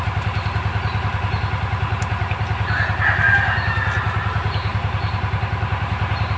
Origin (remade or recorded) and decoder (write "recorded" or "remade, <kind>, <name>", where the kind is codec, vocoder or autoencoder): recorded